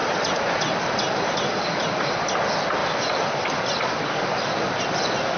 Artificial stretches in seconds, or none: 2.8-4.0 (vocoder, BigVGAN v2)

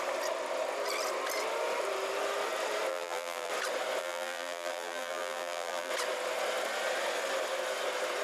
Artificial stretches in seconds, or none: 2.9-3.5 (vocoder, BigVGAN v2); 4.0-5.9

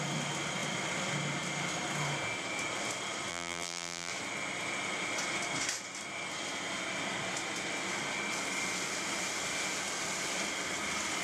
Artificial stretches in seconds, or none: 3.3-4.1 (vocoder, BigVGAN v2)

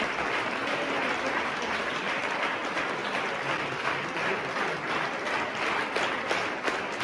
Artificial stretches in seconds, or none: 0.6-1.9 (vocoder, BigVGAN v2)

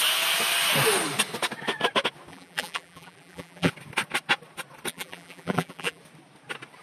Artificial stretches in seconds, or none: 2.3-3.7 (vocoder, BigVGAN v2); 4.9-6.0

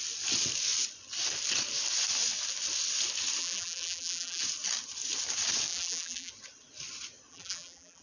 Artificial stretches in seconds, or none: 3.4-4.4 (vocoder, BigVGAN v2); 5.7-6.3; 7.3-8.0

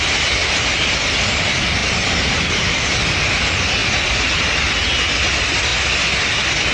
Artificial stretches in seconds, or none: 0.4-1.2 (vocoder, BigVGAN v2); 1.8-2.9

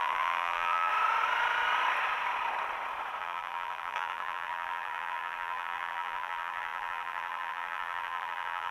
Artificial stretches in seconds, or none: 0.0-0.9 (vocoder, BigVGAN v2); 3.2-8.7